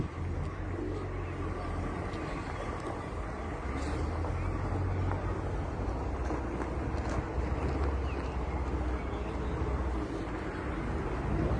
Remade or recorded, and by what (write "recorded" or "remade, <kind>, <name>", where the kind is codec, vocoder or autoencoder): recorded